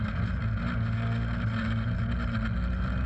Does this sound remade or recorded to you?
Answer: recorded